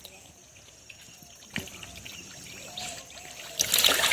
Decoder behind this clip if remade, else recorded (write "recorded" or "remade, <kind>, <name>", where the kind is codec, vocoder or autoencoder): remade, vocoder, BigVGAN v2